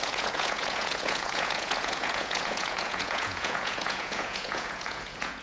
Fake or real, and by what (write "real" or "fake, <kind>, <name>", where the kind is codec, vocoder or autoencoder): fake, vocoder, Vocos